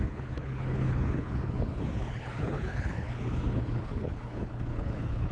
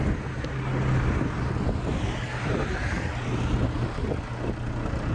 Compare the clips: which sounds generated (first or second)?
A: first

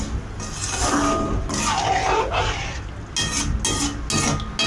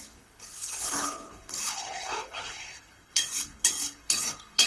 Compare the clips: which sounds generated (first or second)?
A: second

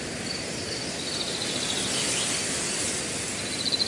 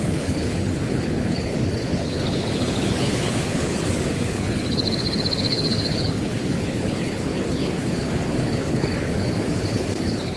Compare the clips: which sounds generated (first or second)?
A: second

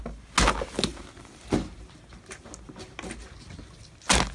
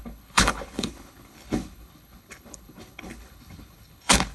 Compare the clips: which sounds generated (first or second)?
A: second